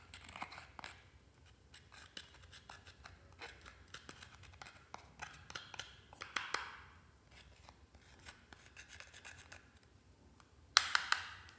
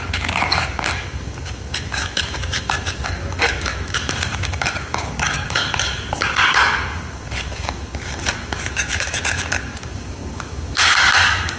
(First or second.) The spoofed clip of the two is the second